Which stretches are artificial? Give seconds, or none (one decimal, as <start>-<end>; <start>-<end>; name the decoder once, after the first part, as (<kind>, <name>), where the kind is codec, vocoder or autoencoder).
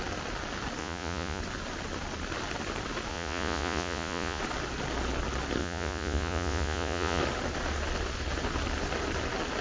0.8-1.4 (vocoder, Vocos); 3.1-4.4; 5.6-7.2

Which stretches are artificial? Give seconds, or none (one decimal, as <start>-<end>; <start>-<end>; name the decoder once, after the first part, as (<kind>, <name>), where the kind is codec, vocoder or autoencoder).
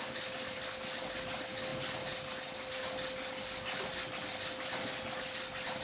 none